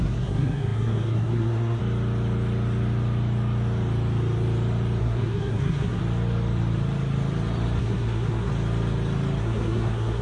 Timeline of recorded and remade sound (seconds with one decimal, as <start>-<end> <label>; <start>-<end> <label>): 0.0-1.8 remade; 1.8-5.0 recorded; 5.0-6.0 remade; 6.0-7.8 recorded; 7.8-8.5 remade; 8.5-9.4 recorded; 9.4-10.2 remade